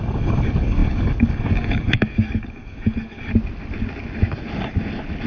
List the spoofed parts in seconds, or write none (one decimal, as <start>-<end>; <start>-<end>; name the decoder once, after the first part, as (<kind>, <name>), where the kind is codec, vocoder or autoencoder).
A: 0.0-3.3 (codec, DAC)